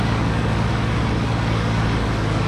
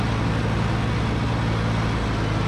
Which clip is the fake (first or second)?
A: first